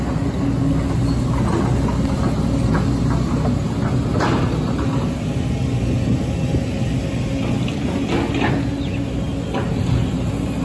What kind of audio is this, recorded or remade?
recorded